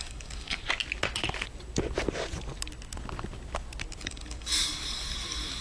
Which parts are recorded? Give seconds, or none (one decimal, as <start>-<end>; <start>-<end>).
0.6-4.0